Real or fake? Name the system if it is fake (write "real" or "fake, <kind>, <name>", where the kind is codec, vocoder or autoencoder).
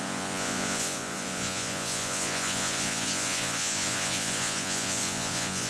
fake, vocoder, Vocos